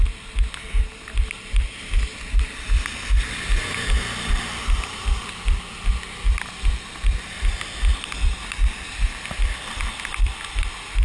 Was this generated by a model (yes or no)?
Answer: no